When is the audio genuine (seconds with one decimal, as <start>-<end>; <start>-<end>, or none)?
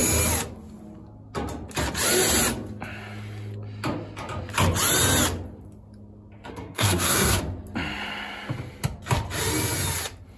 0.0-6.5; 7.4-10.4